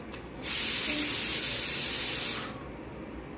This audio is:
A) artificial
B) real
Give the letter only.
B